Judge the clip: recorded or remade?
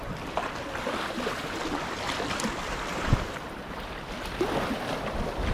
recorded